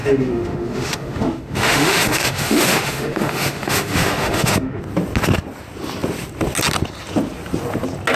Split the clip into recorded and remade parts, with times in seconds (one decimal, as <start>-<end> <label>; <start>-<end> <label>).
0.0-4.8 remade; 4.8-8.2 recorded